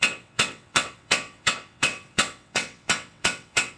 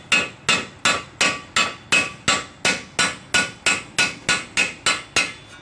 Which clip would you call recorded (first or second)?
second